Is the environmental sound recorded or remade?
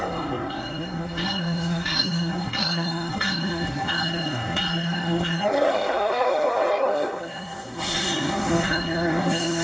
remade